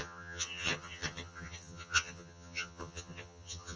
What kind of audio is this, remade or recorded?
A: remade